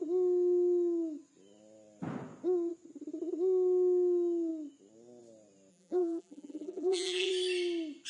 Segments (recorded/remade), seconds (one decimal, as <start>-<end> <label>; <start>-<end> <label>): 0.0-5.7 recorded; 5.7-7.3 remade; 7.3-8.1 recorded